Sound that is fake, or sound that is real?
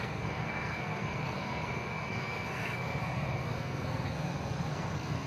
fake